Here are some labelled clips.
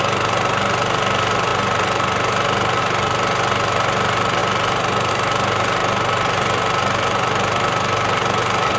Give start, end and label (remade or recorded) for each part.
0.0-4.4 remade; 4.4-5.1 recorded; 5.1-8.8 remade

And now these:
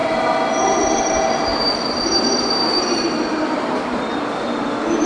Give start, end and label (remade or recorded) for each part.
0.0-1.5 recorded; 1.5-4.4 remade; 4.4-5.1 recorded

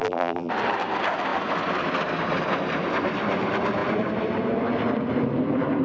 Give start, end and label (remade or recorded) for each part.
0.0-0.5 remade; 0.5-5.8 recorded

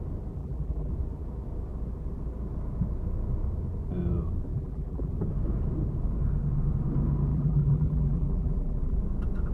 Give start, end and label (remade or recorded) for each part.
0.0-0.4 recorded; 0.4-0.9 remade; 0.9-4.5 recorded; 4.5-5.1 remade; 5.1-7.3 recorded; 7.3-9.0 remade; 9.0-9.5 recorded

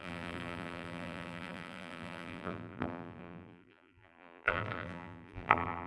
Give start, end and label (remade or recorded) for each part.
0.0-5.9 remade

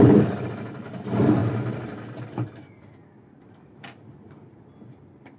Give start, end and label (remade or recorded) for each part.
0.0-5.4 recorded

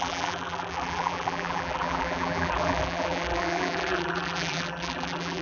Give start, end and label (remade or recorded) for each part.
0.0-5.4 remade